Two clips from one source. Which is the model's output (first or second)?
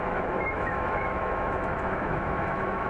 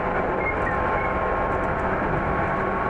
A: first